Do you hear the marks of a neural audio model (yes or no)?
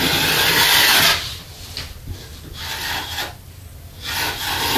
no